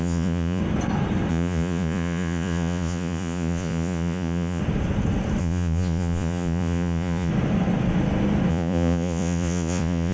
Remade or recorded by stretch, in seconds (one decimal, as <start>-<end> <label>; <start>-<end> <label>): 0.0-0.6 remade; 0.6-1.3 recorded; 1.3-4.6 remade; 4.6-5.4 recorded; 5.4-7.3 remade; 7.3-8.5 recorded; 8.5-10.1 remade